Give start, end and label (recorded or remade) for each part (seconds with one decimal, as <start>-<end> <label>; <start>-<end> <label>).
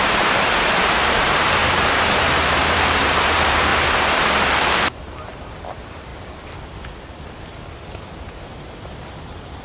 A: 0.0-3.7 remade; 3.7-4.6 recorded; 4.6-6.1 remade; 6.1-8.2 recorded; 8.2-9.6 remade